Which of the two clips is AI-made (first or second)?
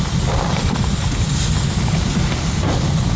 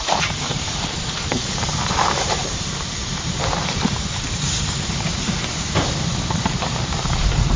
second